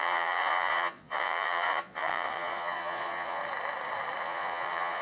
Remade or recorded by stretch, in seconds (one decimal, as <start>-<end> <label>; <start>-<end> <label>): 0.0-3.4 remade; 3.4-4.2 recorded; 4.2-5.0 remade